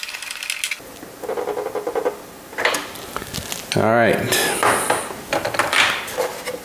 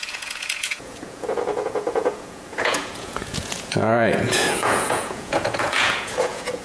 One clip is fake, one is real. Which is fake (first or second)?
second